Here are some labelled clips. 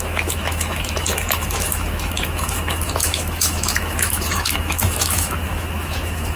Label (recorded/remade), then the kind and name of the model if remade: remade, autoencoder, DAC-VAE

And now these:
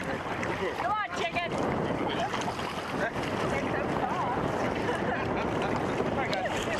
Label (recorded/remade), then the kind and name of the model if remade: recorded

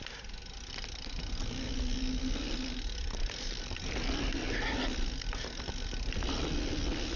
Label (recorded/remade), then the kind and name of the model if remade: recorded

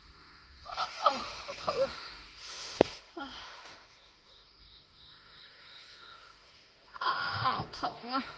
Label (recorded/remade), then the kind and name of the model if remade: remade, autoencoder, DAC-VAE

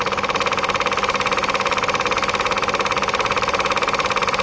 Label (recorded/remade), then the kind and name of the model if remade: recorded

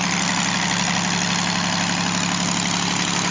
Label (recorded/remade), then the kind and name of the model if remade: recorded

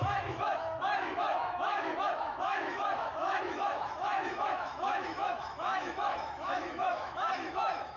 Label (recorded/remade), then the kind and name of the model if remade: remade, autoencoder, DAC-VAE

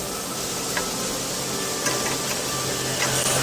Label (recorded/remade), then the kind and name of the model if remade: recorded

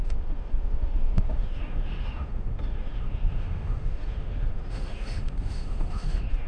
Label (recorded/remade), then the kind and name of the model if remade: remade, autoencoder, DAC-VAE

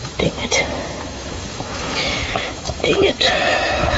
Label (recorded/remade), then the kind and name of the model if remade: remade, autoencoder, DAC-VAE